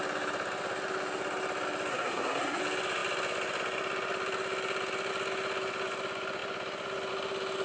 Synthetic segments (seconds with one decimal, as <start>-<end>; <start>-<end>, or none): 1.9-2.6